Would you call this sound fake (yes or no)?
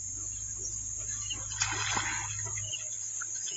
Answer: no